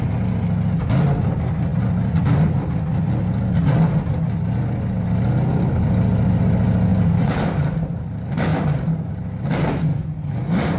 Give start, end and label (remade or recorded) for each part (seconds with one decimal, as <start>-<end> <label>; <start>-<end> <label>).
0.0-6.9 recorded; 6.9-8.0 remade; 8.0-8.5 recorded; 8.5-9.1 remade; 9.1-9.9 recorded; 9.9-10.8 remade